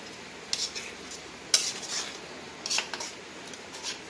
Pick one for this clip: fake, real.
real